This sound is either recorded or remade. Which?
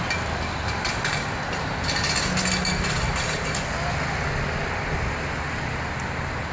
recorded